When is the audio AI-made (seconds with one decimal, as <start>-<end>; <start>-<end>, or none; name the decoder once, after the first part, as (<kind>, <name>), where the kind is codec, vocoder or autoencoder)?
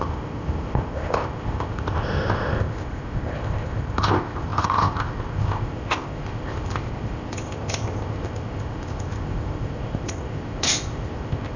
0.0-11.6 (codec, ZipCodec)